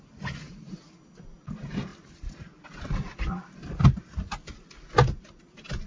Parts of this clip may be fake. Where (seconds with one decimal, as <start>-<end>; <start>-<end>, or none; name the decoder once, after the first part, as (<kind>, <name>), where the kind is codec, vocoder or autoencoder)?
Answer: none